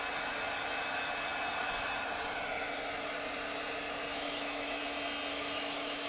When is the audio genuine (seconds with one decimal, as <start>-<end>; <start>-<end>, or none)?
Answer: 0.0-4.1; 4.8-5.3